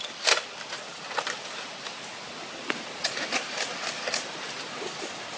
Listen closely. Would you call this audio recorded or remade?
recorded